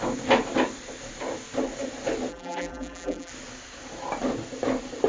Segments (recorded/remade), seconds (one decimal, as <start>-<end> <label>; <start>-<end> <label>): 0.0-2.3 recorded; 2.3-3.3 remade; 3.3-5.1 recorded